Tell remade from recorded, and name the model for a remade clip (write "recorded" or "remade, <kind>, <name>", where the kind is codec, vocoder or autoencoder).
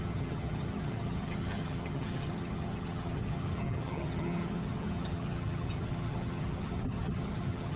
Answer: remade, vocoder, HiFi-GAN